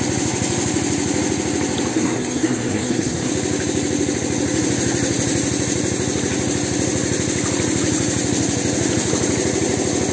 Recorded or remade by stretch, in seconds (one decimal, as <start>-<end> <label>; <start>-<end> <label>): 0.0-1.9 recorded; 1.9-3.3 remade; 3.3-10.1 recorded